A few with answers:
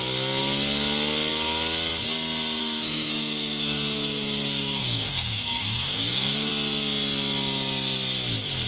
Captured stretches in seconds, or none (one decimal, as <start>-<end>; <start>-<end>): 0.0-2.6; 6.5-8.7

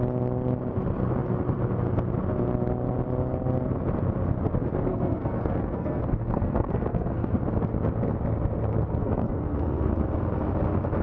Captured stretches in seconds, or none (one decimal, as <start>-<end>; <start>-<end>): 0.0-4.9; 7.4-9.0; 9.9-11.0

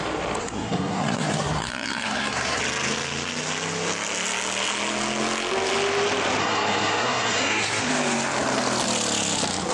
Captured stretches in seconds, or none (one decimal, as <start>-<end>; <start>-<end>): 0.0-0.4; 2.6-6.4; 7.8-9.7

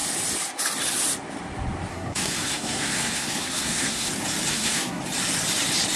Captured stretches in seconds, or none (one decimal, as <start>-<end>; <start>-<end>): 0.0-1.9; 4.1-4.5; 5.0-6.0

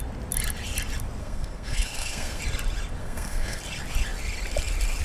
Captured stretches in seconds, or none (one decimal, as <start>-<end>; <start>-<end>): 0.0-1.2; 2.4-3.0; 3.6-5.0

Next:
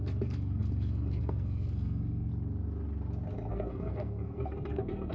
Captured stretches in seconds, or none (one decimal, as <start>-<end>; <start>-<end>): 2.3-3.5

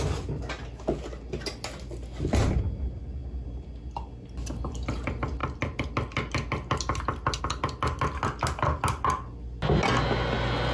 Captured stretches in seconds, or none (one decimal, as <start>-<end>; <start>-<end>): 0.0-10.7